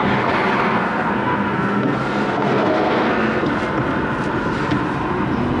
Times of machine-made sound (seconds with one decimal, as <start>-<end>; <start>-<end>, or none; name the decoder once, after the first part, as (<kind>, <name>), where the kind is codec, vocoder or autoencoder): 0.6-3.4 (codec, SNAC)